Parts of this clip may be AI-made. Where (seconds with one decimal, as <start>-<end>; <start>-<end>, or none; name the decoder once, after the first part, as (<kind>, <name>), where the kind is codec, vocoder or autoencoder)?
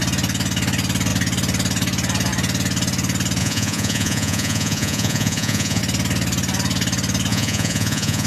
3.4-5.8 (vocoder, Vocos); 7.3-8.3